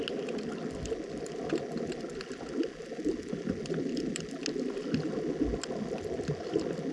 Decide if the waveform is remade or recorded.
recorded